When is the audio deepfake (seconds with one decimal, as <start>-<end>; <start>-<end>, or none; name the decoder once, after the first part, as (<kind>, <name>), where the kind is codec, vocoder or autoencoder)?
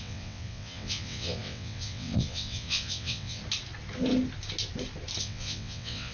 0.0-3.4 (vocoder, WaveNeXt); 5.2-6.1